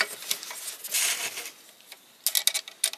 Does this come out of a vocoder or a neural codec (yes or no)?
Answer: no